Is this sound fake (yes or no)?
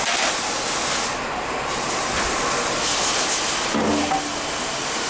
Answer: no